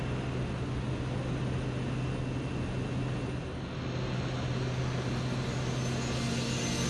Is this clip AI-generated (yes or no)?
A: no